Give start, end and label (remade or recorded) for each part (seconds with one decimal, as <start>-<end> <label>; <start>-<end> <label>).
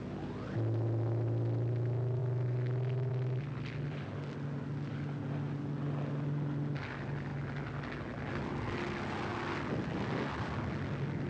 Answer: 0.0-11.3 recorded